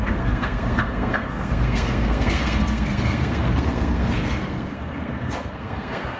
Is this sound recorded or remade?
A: remade